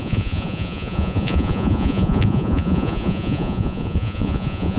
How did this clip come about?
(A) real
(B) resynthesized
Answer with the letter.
B